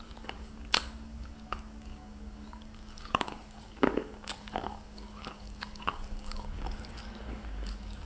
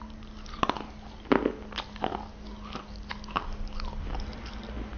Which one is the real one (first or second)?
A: second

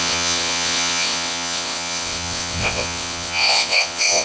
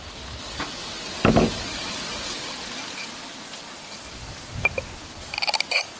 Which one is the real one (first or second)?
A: second